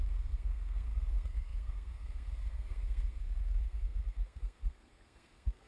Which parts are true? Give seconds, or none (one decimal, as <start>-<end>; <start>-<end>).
none